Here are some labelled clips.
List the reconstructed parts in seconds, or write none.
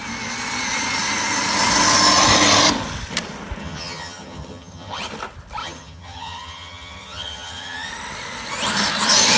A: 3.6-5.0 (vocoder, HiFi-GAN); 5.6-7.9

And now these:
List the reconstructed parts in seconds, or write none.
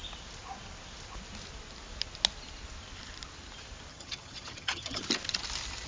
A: 3.9-5.0 (vocoder, HiFi-GAN)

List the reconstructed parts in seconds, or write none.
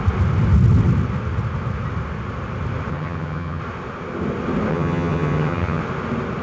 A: 2.9-3.6 (vocoder, HiFi-GAN); 4.7-5.8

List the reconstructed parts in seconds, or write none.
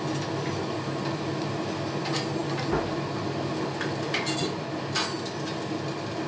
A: none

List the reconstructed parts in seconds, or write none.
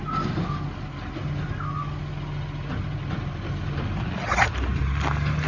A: none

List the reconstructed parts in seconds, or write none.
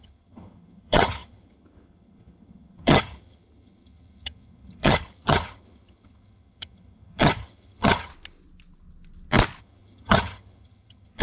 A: 0.0-8.1 (vocoder, HiFi-GAN); 9.6-11.2